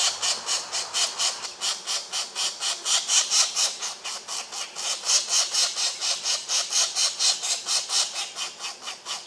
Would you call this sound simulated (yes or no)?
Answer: no